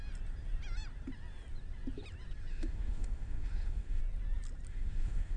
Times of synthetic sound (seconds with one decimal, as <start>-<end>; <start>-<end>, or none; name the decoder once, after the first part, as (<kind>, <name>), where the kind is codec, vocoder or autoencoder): 2.5-4.0 (autoencoder, DAC-VAE); 4.7-5.4